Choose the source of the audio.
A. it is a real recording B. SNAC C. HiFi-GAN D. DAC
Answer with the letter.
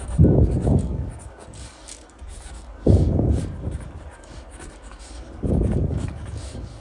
D